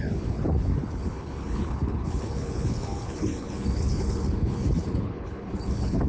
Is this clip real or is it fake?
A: fake